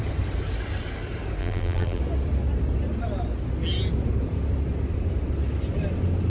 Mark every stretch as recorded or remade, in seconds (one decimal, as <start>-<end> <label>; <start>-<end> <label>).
0.0-1.4 recorded; 1.4-2.0 remade; 2.0-6.3 recorded